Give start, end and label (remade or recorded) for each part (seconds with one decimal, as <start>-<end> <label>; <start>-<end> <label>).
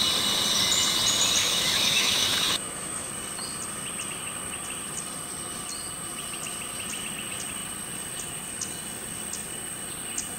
0.0-1.4 recorded; 1.4-3.1 remade; 3.1-10.4 recorded